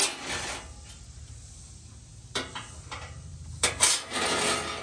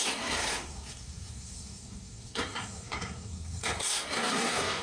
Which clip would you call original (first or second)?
first